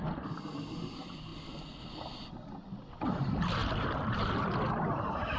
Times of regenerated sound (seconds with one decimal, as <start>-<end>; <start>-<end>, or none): 3.6-4.5